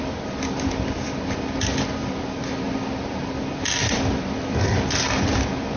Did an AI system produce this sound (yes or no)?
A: no